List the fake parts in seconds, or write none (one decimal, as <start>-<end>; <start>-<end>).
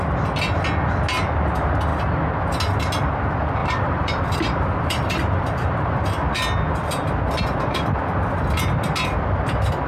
3.6-6.0